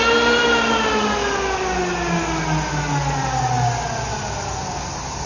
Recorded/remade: recorded